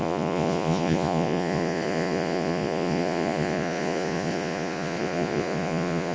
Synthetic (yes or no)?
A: yes